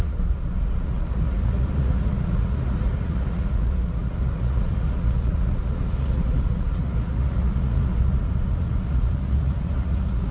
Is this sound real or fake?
fake